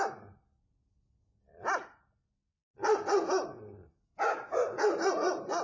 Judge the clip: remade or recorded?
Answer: recorded